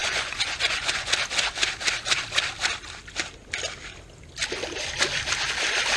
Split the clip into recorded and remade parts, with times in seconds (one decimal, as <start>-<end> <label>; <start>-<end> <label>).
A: 0.0-1.1 remade; 1.1-6.0 recorded